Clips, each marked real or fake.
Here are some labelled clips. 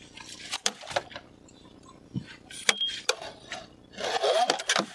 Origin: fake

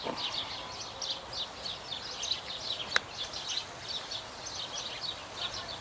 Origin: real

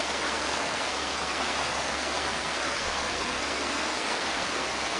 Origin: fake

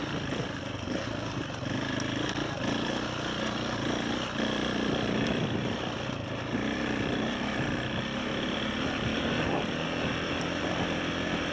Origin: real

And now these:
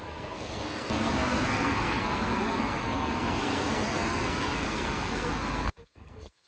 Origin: fake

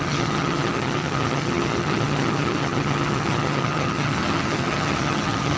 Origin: fake